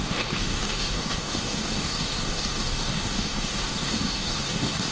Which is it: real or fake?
fake